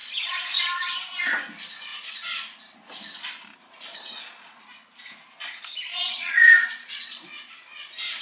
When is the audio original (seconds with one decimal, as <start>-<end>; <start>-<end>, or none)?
1.2-3.9; 4.6-5.9; 7.3-8.2

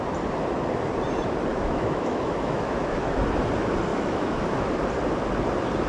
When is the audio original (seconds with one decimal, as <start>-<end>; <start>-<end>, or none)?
0.0-1.5; 3.2-3.9; 4.7-5.9

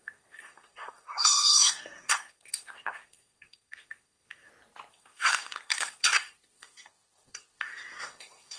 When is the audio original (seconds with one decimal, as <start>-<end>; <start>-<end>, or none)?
4.5-4.9

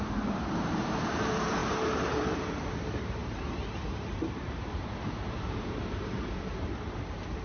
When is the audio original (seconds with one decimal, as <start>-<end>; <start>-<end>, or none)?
none

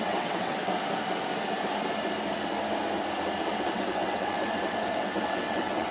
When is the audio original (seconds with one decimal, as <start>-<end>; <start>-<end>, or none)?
0.7-3.5

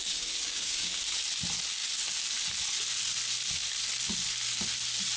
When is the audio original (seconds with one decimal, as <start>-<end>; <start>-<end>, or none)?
1.0-5.2

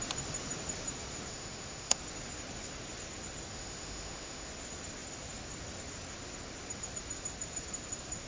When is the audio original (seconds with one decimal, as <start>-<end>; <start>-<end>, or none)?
0.0-1.3; 2.0-3.5; 4.5-8.3

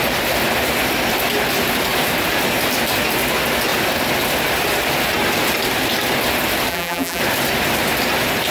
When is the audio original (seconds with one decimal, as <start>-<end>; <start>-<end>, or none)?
0.0-6.7; 7.2-8.5